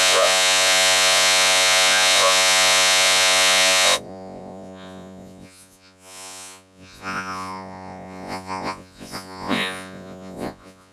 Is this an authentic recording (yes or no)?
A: no